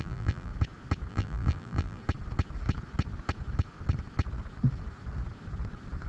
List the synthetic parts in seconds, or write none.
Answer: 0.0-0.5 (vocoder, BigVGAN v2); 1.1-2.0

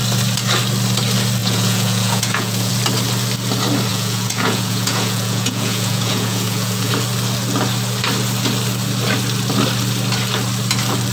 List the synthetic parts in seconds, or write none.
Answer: 1.4-2.7 (vocoder, Vocos); 3.9-6.9

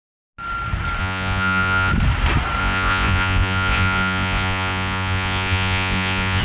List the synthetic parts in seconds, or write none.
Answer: 1.0-1.9 (vocoder, Vocos); 2.6-6.4

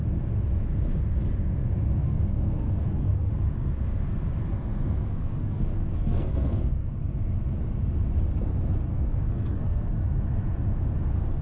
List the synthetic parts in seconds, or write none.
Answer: 2.0-3.3 (codec, SNAC); 4.5-6.9; 8.9-9.9

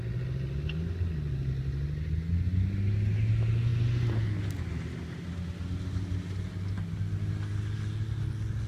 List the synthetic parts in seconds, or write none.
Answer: none

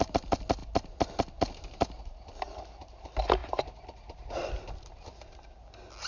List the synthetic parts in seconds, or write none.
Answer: none

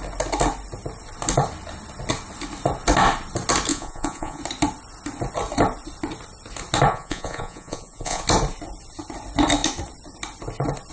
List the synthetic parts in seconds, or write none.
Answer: 3.7-4.4 (vocoder, Vocos); 6.9-8.2

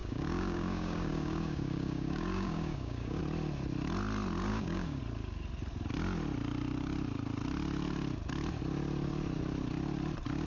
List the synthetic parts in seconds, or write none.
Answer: 0.0-3.2 (codec, DAC); 4.5-5.0